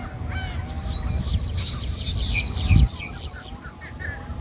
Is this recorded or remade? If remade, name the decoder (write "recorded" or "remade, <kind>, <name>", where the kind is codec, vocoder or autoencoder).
recorded